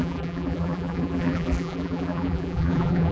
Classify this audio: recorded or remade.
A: remade